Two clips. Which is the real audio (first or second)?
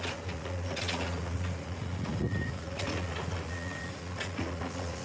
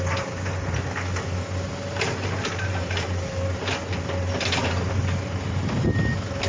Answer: second